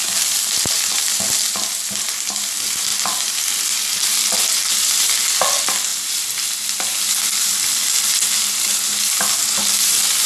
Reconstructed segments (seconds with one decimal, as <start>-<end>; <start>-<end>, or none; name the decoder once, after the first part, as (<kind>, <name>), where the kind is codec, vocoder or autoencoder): none